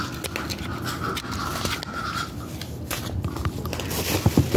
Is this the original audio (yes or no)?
yes